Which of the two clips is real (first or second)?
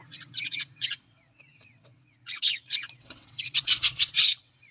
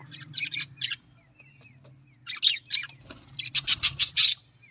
second